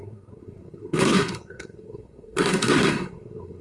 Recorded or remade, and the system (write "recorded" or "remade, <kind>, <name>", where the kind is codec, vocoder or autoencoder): remade, codec, SNAC